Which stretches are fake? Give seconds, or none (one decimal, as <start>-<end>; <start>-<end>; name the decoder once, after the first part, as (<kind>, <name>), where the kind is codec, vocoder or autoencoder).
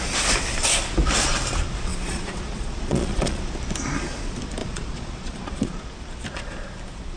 1.9-3.4 (vocoder, Vocos); 4.6-5.8